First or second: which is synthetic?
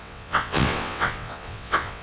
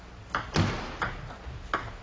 first